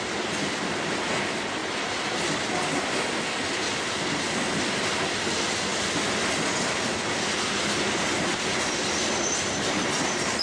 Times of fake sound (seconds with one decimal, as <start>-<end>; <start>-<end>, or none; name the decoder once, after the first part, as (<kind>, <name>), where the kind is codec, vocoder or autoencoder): none